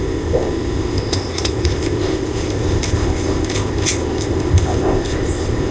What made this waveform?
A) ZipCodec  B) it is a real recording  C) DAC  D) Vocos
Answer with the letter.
A